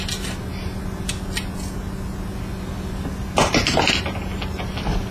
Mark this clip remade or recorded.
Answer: recorded